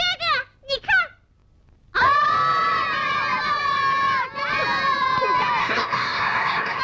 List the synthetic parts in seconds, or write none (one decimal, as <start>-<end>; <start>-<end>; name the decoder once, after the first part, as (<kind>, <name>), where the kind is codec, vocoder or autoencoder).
5.6-6.8 (codec, SNAC)